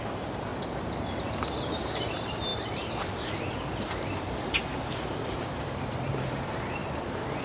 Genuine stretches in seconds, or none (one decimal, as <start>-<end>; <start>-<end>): 0.5-1.6